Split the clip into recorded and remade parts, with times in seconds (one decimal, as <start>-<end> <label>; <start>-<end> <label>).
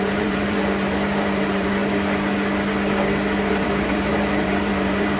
0.0-1.8 remade; 1.8-3.5 recorded; 3.5-5.2 remade